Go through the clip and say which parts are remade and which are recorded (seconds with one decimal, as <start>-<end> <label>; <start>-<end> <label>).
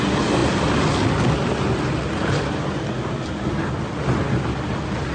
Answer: 0.0-5.1 recorded